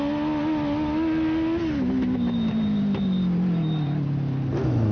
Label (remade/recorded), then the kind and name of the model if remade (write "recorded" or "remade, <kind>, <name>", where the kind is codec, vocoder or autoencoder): recorded